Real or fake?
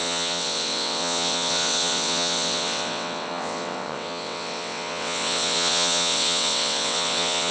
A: fake